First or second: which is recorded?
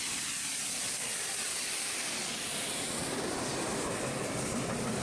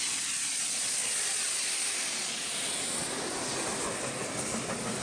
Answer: second